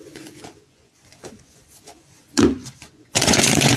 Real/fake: fake